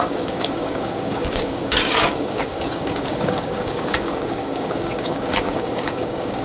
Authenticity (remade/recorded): remade